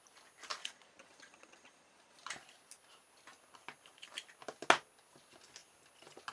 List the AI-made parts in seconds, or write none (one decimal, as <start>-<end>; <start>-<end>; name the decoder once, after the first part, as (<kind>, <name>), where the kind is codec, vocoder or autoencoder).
0.6-2.3 (vocoder, Vocos)